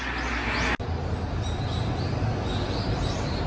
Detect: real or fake real